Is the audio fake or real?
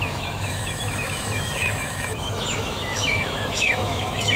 fake